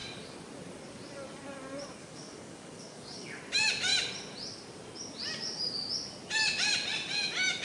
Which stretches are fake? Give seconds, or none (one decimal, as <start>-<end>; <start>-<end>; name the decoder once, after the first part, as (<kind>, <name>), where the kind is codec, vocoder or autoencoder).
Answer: 2.0-3.4 (codec, DAC)